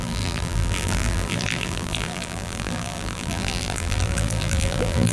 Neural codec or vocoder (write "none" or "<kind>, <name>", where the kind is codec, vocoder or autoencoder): vocoder, BigVGAN v2